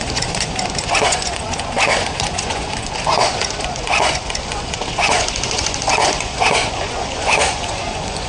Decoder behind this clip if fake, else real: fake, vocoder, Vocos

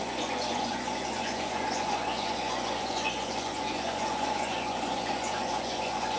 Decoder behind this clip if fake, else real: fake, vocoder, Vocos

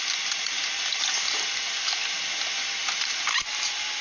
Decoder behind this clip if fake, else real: real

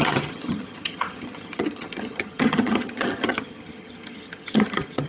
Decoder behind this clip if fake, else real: fake, vocoder, HiFi-GAN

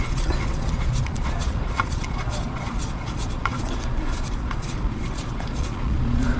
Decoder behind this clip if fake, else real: fake, vocoder, Vocos